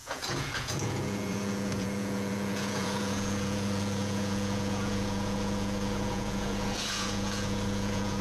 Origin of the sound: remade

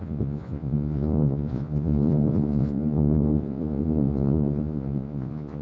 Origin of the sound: remade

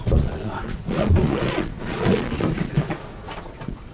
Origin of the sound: remade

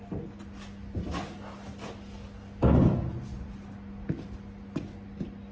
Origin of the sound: recorded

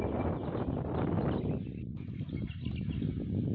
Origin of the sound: recorded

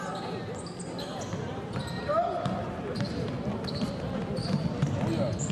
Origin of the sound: recorded